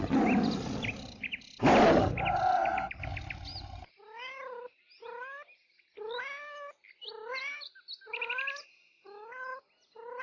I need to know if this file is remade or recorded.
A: recorded